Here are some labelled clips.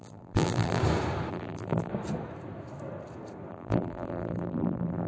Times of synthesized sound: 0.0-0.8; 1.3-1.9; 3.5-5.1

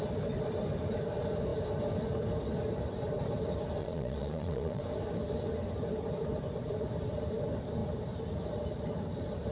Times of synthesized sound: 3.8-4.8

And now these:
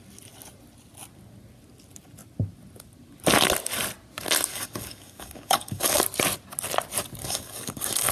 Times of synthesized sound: 4.5-6.0; 7.2-8.1

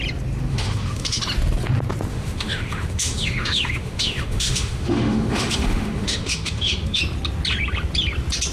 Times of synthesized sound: 0.5-1.2; 2.1-7.0

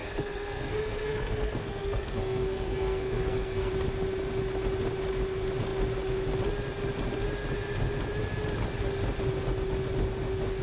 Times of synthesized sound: 0.0-3.7